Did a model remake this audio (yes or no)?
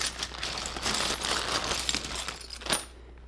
no